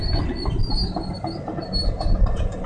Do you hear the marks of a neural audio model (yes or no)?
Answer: no